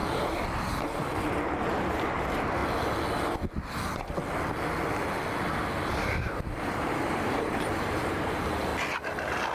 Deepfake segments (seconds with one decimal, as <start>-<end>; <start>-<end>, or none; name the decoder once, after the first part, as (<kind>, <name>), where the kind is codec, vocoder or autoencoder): 1.8-2.6 (vocoder, BigVGAN v2); 6.6-8.7